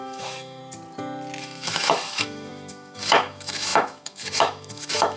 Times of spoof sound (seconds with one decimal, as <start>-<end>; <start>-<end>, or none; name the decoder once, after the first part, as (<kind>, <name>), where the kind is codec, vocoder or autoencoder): 0.0-0.6 (autoencoder, DAC-VAE); 1.4-5.2